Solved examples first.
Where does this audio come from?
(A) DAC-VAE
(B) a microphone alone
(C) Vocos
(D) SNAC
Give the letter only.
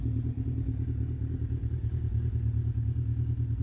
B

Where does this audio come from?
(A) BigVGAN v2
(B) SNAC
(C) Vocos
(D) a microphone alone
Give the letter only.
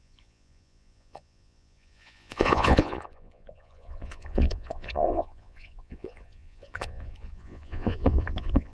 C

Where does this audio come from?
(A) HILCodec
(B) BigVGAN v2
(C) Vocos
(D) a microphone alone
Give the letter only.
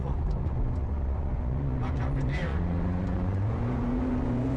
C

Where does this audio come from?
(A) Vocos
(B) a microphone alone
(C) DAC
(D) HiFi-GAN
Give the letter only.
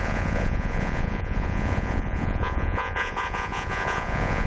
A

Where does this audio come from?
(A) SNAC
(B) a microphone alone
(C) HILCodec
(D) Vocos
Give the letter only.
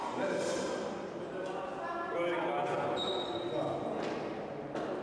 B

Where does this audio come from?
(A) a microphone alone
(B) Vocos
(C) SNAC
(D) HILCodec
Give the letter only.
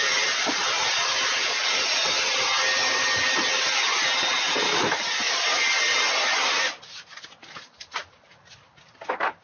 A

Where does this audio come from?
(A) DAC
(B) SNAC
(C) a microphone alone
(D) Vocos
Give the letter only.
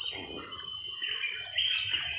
C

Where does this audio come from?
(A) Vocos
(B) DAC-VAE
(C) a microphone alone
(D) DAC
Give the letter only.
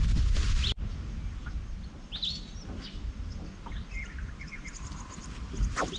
C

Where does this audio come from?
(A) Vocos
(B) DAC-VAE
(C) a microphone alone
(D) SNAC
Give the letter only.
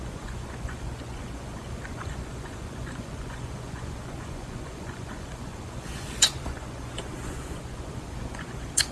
A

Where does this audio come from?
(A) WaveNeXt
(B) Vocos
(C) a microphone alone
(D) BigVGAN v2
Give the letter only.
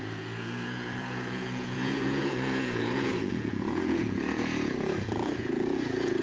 B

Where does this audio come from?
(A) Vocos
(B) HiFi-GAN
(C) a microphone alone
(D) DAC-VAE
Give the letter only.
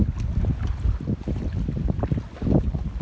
C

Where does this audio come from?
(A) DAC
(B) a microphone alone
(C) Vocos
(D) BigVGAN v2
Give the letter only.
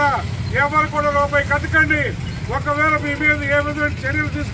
B